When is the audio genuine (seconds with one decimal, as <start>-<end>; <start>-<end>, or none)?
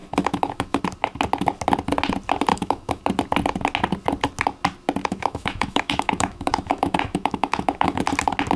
0.8-2.5; 3.0-5.0; 8.0-8.6